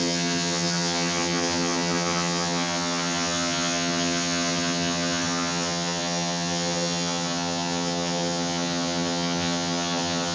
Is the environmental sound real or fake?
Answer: fake